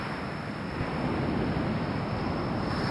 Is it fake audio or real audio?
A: real